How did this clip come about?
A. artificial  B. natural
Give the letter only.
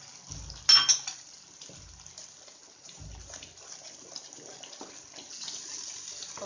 B